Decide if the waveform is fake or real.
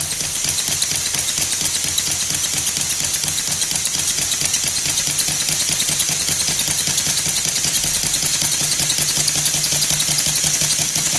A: real